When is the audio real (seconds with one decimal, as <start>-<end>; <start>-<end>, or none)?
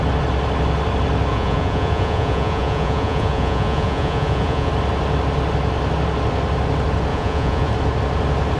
0.0-1.3; 4.7-7.1; 7.7-8.6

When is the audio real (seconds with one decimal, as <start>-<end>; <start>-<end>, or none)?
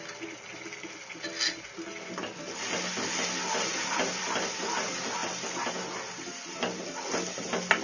0.0-7.8